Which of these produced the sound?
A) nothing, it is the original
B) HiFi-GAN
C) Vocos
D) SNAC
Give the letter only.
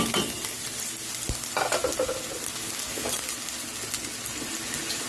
A